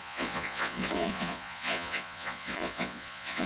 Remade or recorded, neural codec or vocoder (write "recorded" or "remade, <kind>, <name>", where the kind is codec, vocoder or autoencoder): remade, vocoder, Vocos